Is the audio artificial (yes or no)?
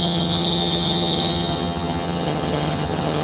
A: yes